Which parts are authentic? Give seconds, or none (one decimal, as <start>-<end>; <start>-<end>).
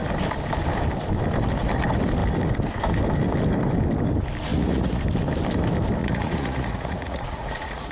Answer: 0.0-4.5; 5.0-6.0